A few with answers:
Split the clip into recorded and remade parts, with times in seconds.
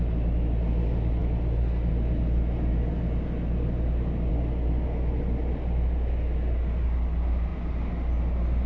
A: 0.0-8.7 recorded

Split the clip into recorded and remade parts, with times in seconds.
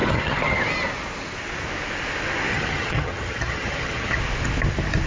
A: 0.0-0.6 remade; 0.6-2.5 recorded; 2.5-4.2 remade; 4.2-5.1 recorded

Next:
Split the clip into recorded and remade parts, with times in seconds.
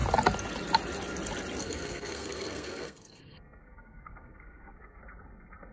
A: 0.0-1.6 recorded; 1.6-5.0 remade; 5.0-5.7 recorded